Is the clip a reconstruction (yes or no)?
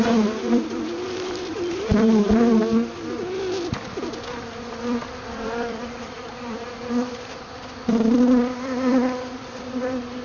yes